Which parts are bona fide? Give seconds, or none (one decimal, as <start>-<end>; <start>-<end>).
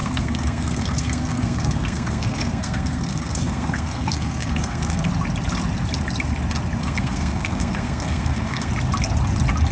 5.1-6.8; 8.7-9.7